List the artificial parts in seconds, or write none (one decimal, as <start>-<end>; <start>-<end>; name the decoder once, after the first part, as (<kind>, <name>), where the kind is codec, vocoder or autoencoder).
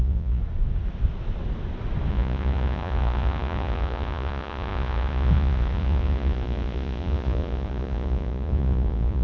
0.0-0.4 (vocoder, Vocos); 2.1-9.2